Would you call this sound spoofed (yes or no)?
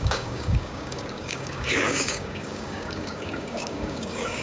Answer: yes